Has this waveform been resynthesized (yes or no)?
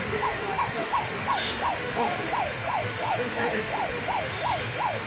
yes